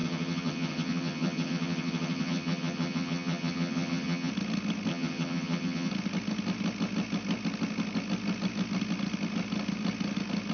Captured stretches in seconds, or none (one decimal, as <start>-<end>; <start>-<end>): 4.3-4.9; 5.9-10.5